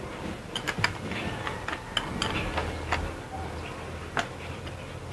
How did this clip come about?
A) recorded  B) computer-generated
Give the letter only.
A